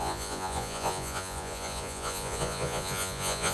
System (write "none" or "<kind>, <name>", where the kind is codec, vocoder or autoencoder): vocoder, Vocos